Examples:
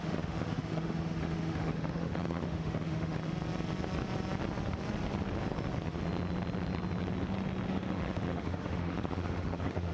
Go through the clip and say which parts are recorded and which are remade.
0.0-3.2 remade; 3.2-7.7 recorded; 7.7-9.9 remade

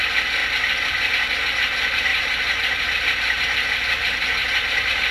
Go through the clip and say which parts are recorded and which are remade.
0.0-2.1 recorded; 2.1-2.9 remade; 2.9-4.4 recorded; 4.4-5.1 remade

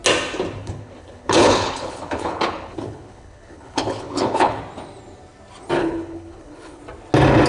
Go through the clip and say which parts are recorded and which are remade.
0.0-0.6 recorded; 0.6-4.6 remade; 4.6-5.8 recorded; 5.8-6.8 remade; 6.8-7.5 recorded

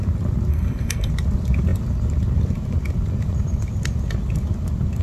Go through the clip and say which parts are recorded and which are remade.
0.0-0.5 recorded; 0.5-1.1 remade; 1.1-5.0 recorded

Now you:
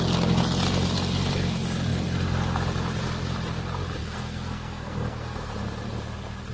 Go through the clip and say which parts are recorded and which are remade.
0.0-4.0 recorded; 4.0-5.5 remade; 5.5-6.5 recorded